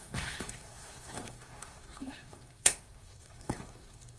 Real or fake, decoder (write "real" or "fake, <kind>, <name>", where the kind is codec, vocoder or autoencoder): fake, codec, SNAC